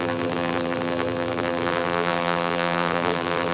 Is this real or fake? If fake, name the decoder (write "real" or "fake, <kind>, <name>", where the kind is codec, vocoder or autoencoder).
fake, vocoder, BigVGAN v2